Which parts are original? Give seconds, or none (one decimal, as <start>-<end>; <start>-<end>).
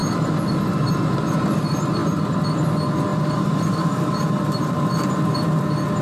0.0-3.1; 5.6-6.0